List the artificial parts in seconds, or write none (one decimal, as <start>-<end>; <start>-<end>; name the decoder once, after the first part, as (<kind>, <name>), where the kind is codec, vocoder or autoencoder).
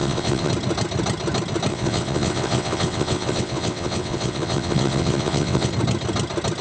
0.0-0.5 (vocoder, WaveNeXt); 1.7-5.7